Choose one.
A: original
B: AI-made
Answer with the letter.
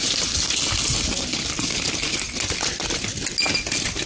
A